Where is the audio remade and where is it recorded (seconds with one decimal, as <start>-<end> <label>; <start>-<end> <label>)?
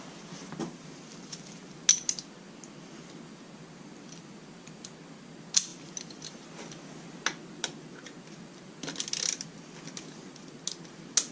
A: 0.0-11.3 recorded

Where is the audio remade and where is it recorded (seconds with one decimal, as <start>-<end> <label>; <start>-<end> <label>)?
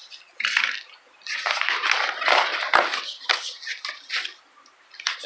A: 0.0-5.3 recorded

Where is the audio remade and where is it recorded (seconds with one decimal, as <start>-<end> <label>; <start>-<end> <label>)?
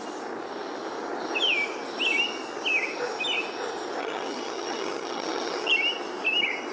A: 0.0-4.0 recorded; 4.0-5.7 remade; 5.7-6.7 recorded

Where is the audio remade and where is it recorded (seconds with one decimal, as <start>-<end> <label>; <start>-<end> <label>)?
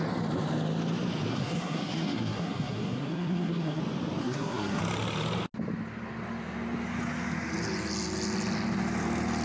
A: 0.0-1.3 recorded; 1.3-3.8 remade; 3.8-4.2 recorded; 4.2-4.8 remade; 4.8-9.4 recorded